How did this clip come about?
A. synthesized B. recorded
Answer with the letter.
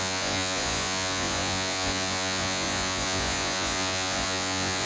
A